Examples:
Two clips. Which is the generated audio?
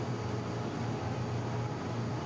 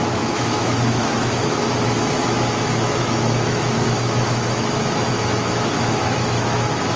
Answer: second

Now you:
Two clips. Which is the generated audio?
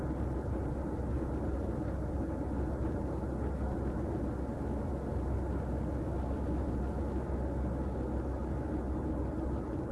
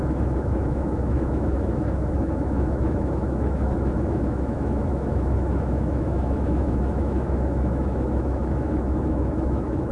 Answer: second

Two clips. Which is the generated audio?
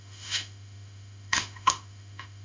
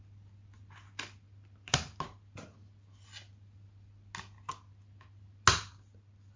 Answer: first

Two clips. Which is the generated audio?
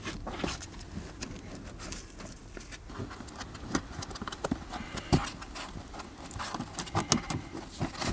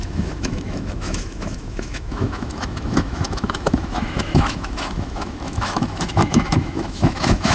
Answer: second